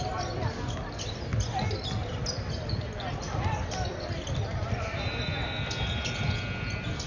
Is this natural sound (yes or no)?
yes